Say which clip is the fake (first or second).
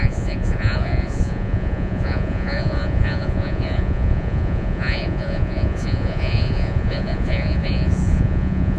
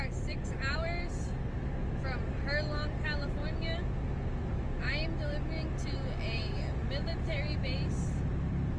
first